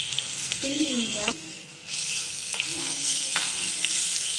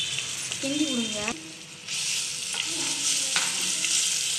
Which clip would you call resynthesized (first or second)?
first